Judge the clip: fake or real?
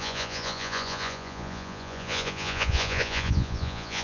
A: fake